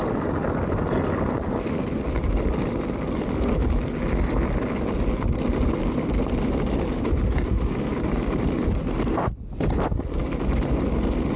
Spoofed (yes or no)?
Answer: no